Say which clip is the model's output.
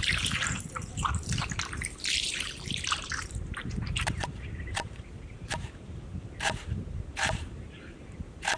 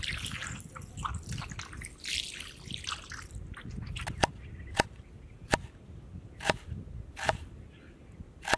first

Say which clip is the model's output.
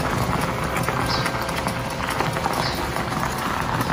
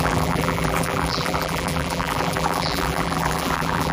second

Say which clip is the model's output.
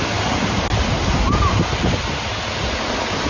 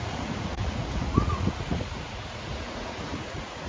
second